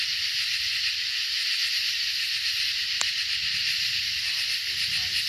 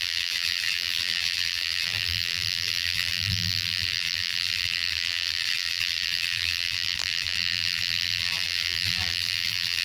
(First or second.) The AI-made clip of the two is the second